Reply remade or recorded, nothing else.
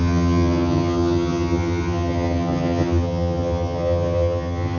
remade